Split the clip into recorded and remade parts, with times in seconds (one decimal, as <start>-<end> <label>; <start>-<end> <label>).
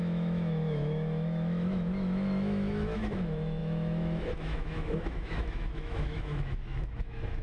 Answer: 0.0-7.4 remade